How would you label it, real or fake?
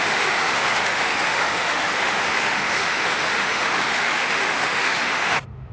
fake